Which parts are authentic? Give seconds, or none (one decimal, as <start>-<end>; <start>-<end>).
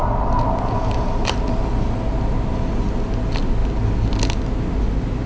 0.0-5.3